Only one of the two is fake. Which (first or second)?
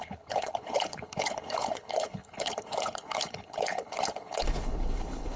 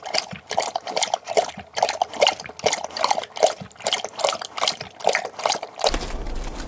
first